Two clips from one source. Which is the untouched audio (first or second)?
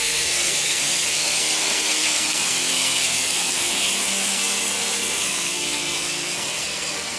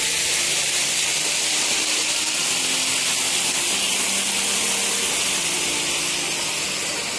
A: second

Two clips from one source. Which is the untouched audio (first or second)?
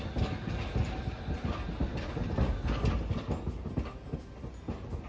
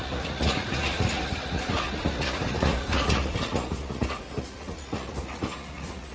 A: first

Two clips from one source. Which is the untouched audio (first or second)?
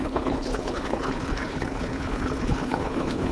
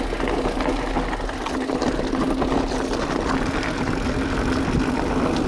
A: second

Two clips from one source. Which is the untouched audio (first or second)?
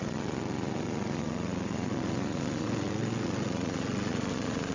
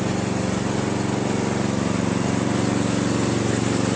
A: second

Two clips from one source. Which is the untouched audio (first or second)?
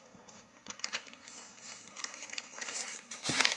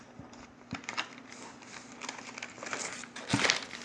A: second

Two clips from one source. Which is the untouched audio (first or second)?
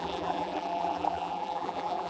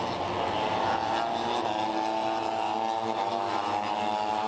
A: second